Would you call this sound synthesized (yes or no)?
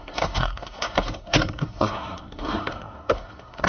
yes